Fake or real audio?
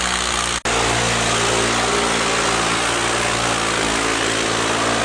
real